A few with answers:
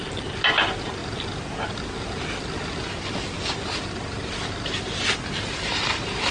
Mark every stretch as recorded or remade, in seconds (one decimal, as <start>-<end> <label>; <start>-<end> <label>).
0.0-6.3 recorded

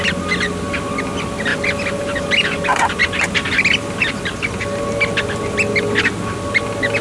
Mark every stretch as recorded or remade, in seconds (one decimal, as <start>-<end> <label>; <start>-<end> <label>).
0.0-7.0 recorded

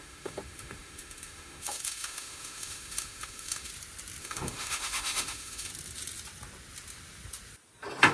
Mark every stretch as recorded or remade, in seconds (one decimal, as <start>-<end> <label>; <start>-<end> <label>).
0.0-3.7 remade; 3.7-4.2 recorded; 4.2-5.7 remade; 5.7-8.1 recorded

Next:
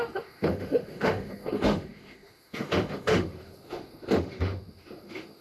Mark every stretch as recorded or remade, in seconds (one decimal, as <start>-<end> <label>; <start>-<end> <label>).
0.0-5.4 remade

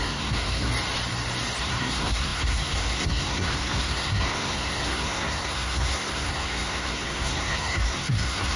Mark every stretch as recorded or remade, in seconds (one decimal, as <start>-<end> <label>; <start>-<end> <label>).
0.0-0.7 remade; 0.7-1.6 recorded; 1.6-8.6 remade

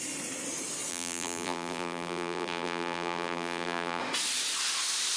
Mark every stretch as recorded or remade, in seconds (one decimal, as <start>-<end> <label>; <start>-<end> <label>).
0.0-0.9 recorded; 0.9-4.0 remade; 4.0-5.2 recorded